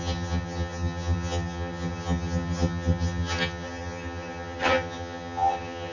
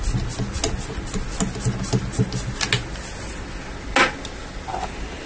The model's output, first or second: first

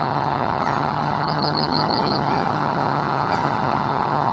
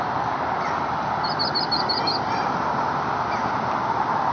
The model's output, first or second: first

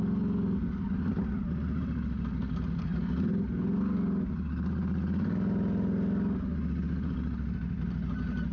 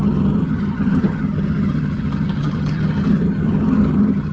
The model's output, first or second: second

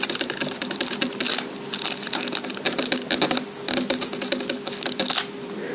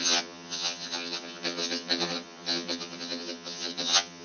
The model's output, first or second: second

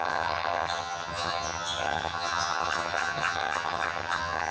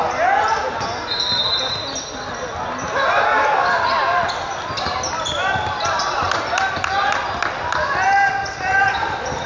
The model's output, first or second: first